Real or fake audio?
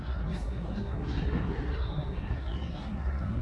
fake